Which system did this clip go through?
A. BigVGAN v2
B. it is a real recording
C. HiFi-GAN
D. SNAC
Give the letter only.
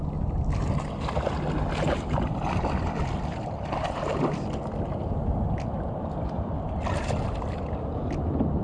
B